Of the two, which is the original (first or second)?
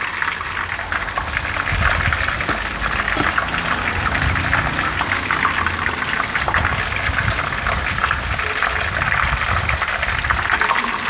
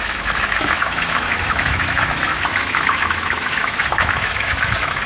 first